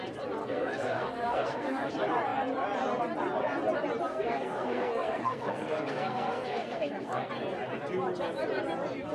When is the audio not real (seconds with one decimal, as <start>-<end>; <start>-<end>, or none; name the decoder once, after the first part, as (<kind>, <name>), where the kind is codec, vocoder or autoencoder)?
0.4-1.9 (codec, SNAC); 4.1-7.3